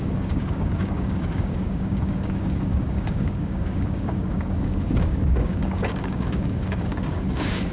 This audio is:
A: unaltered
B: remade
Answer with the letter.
B